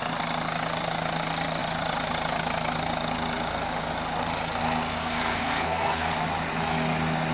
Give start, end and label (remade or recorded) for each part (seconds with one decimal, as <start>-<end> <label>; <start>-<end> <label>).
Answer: 0.0-5.0 recorded; 5.0-6.1 remade; 6.1-7.3 recorded